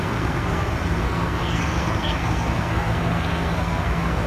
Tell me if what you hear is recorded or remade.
remade